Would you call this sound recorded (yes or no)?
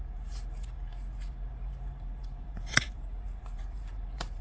no